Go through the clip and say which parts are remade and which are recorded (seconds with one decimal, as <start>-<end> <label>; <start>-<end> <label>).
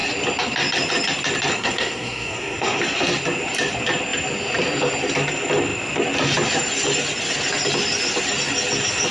0.0-1.5 recorded; 1.5-2.8 remade; 2.8-9.1 recorded